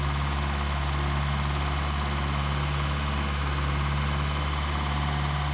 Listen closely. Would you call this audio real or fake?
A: real